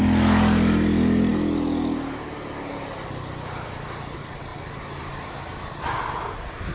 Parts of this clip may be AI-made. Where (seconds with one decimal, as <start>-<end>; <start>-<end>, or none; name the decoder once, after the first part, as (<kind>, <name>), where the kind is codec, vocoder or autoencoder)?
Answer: none